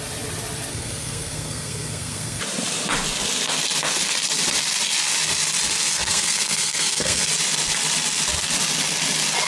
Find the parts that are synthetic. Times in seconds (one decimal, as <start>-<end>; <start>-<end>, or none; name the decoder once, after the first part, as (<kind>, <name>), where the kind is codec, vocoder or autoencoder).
0.7-2.4 (codec, SNAC); 5.8-7.3